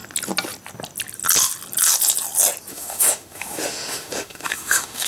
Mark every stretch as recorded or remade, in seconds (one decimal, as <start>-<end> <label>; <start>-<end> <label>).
0.0-2.7 recorded; 2.7-5.1 remade